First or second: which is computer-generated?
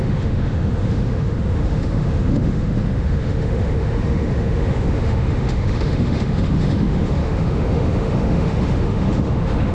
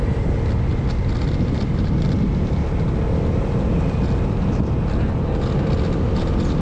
first